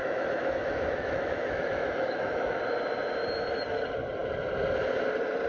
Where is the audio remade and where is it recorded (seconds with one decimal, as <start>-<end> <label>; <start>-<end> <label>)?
0.0-2.6 remade; 2.6-5.5 recorded

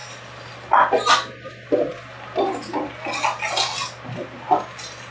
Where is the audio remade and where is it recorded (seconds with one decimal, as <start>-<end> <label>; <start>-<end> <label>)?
0.0-5.1 recorded

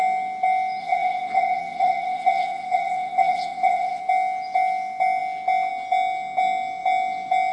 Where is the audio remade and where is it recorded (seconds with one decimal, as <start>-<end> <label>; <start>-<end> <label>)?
0.0-0.8 recorded; 0.8-4.0 remade; 4.0-7.5 recorded

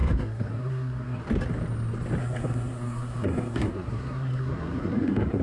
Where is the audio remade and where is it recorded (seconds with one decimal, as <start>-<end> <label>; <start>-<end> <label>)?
0.0-1.2 remade; 1.2-2.2 recorded; 2.2-5.4 remade

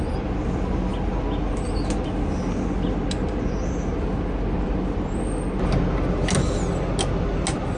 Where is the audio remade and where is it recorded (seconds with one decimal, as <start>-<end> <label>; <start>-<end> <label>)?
0.0-7.8 recorded